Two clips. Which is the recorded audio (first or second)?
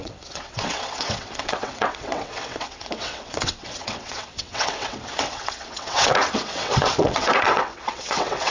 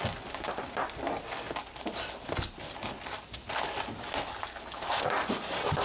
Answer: second